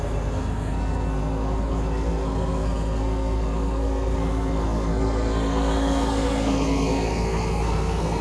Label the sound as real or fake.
fake